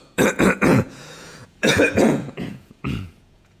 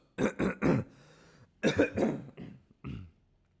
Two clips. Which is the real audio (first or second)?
second